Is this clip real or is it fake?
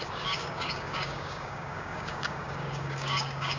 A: fake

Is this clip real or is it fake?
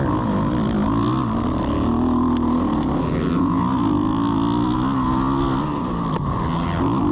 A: real